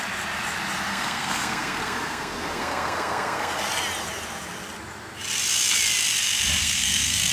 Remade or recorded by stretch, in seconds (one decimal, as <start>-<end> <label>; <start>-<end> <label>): 0.0-0.9 recorded; 0.9-3.6 remade; 3.6-6.6 recorded; 6.6-7.3 remade